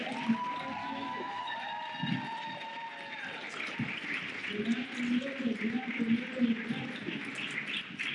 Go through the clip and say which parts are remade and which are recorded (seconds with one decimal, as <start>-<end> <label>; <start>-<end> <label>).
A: 0.0-0.8 recorded; 0.8-1.5 remade; 1.5-8.1 recorded